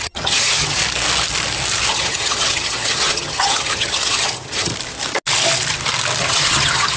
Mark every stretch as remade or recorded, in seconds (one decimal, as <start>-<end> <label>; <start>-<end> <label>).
0.0-0.8 remade; 0.8-1.9 recorded; 1.9-4.7 remade; 4.7-6.2 recorded; 6.2-7.0 remade

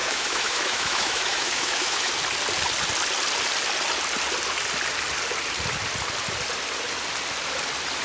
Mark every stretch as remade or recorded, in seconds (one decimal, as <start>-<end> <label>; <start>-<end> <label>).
0.0-2.1 remade; 2.1-8.0 recorded

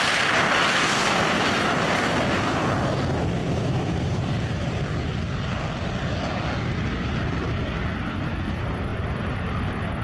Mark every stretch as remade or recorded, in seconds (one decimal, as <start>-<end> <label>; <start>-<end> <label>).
0.0-1.0 recorded; 1.0-2.7 remade; 2.7-3.4 recorded; 3.4-4.8 remade; 4.8-8.9 recorded; 8.9-9.6 remade; 9.6-10.0 recorded